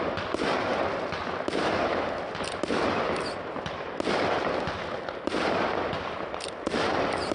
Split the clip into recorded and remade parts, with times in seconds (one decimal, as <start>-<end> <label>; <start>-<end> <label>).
0.0-7.3 recorded